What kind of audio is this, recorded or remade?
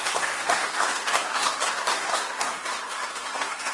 remade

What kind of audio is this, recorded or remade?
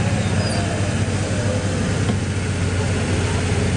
recorded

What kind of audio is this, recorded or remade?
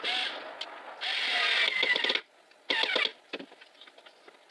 recorded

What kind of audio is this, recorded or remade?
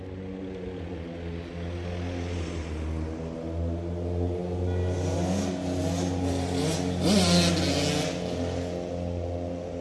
recorded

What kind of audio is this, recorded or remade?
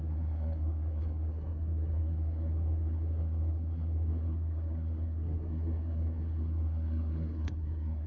remade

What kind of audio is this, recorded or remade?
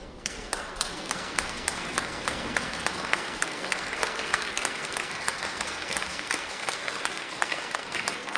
remade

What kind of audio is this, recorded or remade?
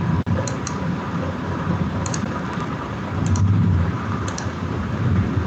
remade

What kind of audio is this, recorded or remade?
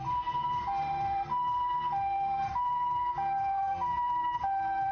recorded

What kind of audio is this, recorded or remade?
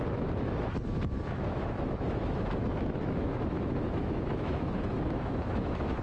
remade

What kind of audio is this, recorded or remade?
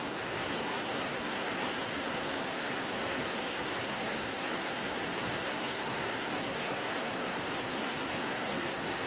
remade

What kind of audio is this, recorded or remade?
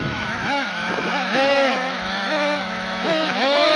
remade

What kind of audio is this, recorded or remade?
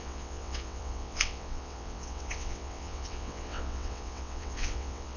remade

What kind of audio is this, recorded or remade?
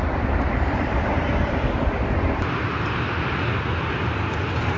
recorded